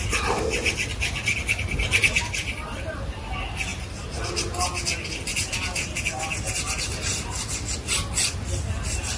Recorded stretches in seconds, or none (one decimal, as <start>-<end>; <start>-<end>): 0.0-9.2